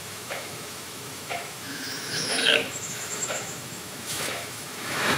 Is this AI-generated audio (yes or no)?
yes